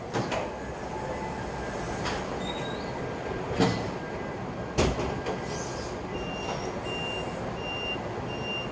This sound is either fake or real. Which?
real